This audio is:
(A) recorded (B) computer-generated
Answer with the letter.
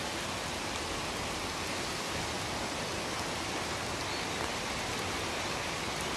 A